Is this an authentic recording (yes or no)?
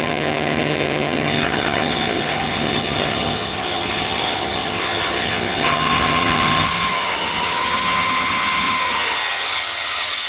no